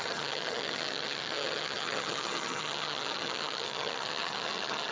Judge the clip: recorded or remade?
remade